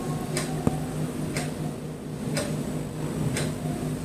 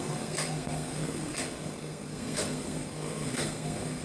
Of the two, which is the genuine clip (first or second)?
first